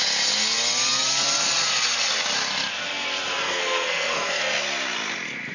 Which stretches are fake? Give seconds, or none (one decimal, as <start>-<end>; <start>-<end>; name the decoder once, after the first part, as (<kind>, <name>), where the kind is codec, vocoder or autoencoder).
3.4-4.4 (codec, SNAC)